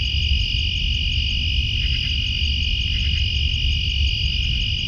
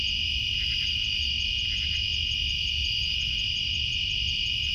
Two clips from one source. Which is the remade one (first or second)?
second